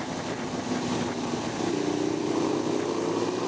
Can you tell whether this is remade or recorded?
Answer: recorded